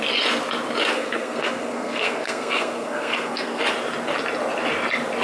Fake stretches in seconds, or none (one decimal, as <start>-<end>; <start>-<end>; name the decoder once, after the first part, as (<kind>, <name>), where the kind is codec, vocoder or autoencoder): 0.9-3.6 (codec, SNAC)